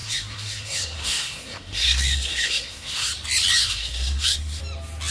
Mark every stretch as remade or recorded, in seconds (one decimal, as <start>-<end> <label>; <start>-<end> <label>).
0.0-3.1 remade; 3.1-3.6 recorded; 3.6-4.6 remade; 4.6-5.1 recorded